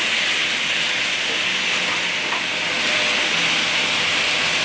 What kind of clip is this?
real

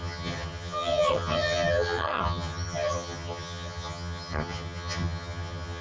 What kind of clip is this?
fake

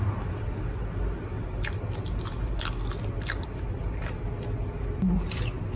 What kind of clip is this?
real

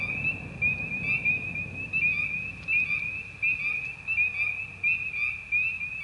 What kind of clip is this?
real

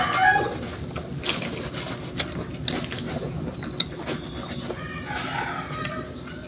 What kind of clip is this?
real